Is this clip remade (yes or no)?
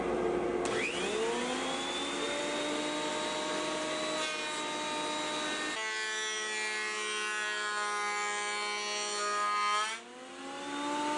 no